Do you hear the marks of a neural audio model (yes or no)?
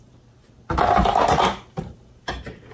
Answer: yes